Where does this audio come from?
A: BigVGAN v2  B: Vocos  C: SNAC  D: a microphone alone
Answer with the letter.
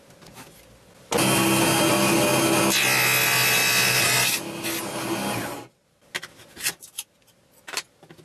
D